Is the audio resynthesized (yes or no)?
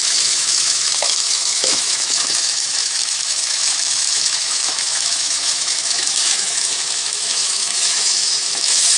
yes